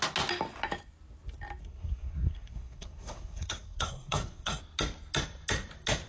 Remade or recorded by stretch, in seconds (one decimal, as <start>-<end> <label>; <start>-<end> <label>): 0.0-1.6 recorded; 1.6-4.6 remade; 4.6-6.1 recorded